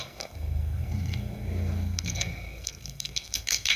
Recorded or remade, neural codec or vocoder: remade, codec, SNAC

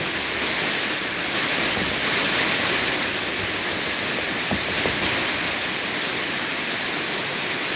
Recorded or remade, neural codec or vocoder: recorded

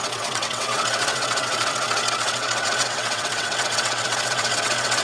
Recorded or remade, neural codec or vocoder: remade, vocoder, WaveNeXt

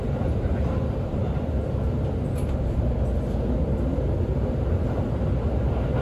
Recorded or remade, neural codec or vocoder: recorded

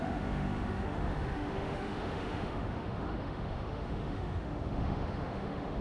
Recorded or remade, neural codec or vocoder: remade, autoencoder, DAC-VAE